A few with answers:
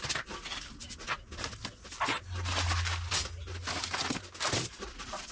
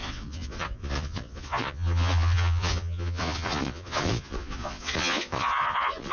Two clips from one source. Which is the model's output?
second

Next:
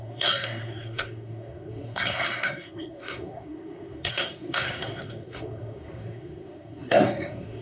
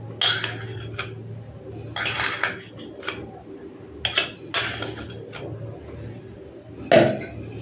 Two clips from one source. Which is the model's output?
first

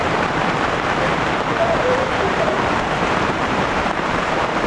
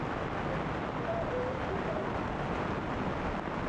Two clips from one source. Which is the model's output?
first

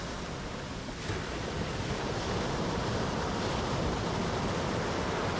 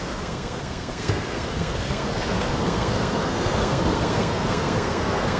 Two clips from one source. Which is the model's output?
second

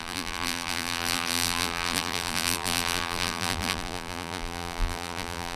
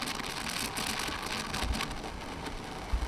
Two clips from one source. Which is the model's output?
first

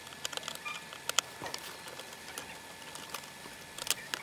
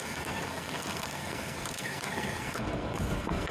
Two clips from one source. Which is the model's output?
second